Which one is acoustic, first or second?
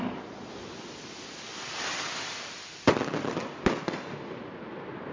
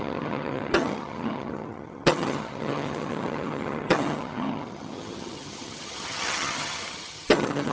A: first